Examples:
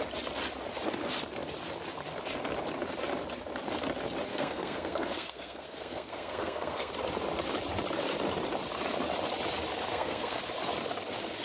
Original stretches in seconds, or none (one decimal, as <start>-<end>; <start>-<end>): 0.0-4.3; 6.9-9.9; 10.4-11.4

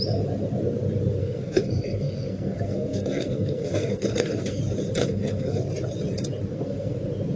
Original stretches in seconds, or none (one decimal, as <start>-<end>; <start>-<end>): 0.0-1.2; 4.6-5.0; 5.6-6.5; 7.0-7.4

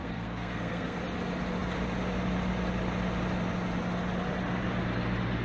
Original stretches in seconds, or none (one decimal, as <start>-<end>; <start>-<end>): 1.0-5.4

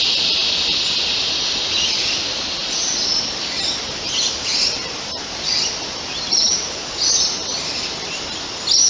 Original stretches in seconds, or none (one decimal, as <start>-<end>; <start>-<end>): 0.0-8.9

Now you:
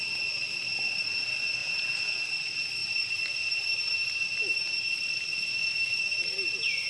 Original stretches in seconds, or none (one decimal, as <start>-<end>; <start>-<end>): 0.0-1.6; 2.2-5.3; 6.0-6.9

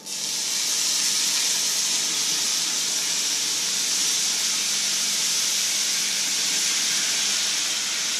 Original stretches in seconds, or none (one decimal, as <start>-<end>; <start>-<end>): 0.0-8.2

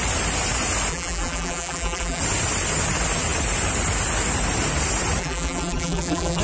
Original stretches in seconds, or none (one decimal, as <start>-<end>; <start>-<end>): 0.0-0.9; 2.2-5.2

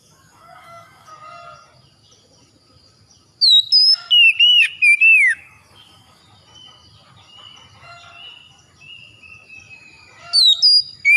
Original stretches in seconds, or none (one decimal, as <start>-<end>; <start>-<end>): 1.1-5.0; 6.2-11.2